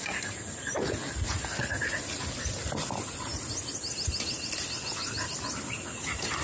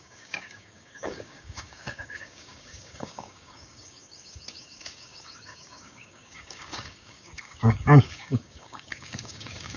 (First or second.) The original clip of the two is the first